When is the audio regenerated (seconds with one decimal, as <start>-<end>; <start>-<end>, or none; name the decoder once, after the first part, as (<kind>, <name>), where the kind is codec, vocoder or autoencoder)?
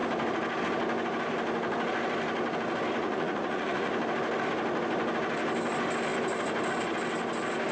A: 3.0-3.9 (vocoder, Vocos)